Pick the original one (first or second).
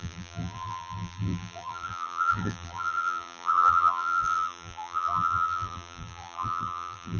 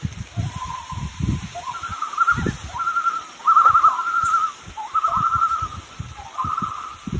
second